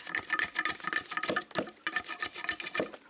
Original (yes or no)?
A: yes